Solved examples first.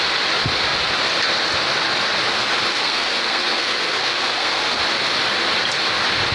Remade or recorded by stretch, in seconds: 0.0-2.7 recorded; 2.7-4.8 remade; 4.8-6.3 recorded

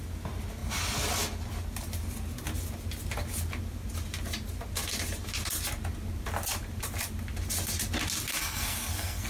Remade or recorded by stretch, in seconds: 0.0-8.4 recorded; 8.4-9.3 remade

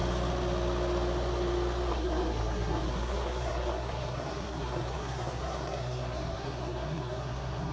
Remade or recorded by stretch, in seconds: 0.0-1.9 recorded; 1.9-7.7 remade

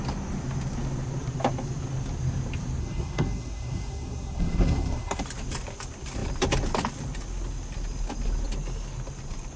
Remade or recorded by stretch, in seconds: 0.0-2.8 recorded; 2.8-5.2 remade; 5.2-9.6 recorded

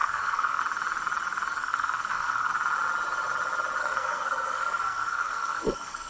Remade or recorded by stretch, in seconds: 0.0-0.6 remade; 0.6-1.6 recorded; 1.6-2.5 remade; 2.5-3.8 recorded; 3.8-6.1 remade

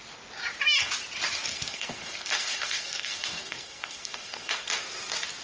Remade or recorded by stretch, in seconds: 0.0-1.5 recorded; 1.5-4.7 remade; 4.7-5.4 recorded

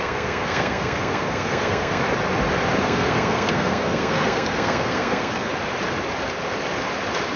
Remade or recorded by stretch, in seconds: 0.0-2.0 remade; 2.0-2.8 recorded; 2.8-5.5 remade; 5.5-7.4 recorded